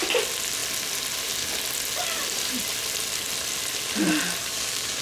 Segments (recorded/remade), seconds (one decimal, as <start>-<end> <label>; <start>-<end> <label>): 0.0-4.4 recorded; 4.4-5.0 remade